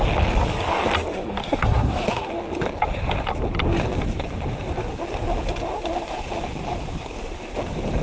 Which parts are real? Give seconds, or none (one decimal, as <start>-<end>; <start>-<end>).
0.0-1.4; 2.3-8.0